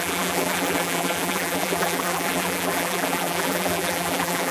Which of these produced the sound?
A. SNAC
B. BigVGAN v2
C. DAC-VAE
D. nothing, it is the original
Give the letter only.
B